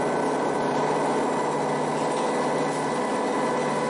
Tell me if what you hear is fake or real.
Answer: real